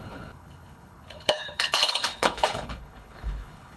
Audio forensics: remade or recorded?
remade